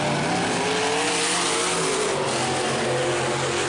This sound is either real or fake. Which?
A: real